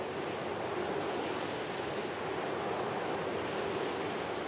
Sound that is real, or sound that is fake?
real